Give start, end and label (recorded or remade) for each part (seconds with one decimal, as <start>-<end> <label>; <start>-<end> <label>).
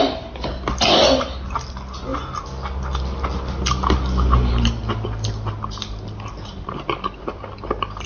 0.0-8.1 recorded